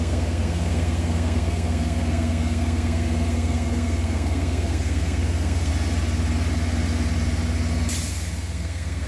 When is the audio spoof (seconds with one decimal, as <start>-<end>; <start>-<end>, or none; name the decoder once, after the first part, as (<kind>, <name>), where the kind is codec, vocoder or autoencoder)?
0.0-5.7 (codec, SNAC); 8.1-9.1